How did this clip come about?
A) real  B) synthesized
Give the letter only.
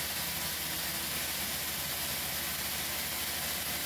A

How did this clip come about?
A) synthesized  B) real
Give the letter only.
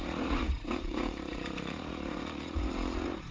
A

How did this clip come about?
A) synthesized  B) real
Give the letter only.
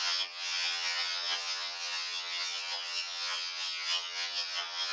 A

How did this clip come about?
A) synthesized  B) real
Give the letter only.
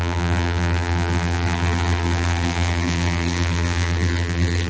A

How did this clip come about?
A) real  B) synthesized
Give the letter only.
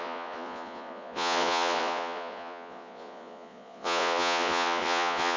B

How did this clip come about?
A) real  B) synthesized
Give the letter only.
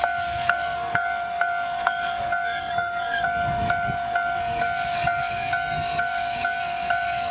B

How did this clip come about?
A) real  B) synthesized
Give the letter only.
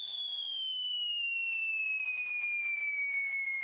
A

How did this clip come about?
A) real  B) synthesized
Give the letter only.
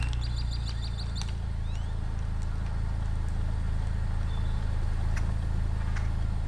A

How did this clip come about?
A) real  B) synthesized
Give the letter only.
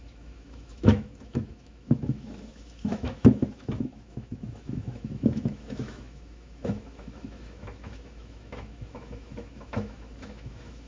B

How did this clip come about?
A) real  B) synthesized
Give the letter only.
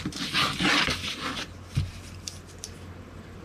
A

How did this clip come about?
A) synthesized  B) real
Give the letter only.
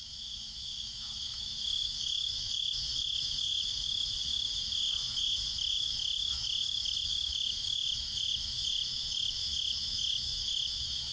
A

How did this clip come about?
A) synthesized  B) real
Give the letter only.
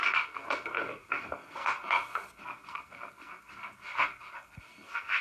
A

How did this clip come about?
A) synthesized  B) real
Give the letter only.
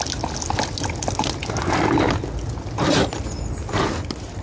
B